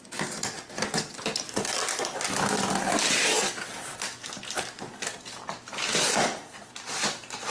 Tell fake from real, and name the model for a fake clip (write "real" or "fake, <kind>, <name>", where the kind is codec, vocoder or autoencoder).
real